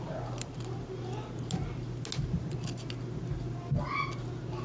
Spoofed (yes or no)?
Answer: no